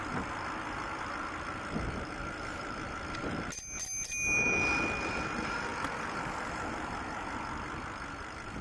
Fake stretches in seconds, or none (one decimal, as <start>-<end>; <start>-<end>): none